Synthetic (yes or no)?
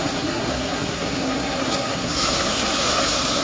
yes